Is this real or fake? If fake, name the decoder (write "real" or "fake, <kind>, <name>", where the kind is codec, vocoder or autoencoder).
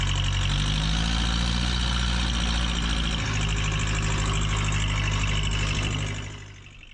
real